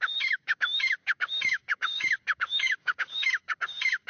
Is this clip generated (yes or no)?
yes